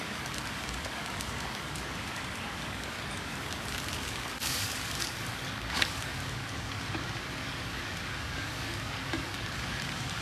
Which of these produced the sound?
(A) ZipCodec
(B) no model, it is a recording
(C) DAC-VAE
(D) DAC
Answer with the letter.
D